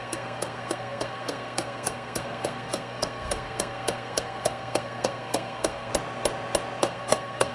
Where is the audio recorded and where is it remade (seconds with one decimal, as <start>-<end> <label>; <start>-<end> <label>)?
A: 0.0-5.9 remade; 5.9-6.8 recorded; 6.8-7.5 remade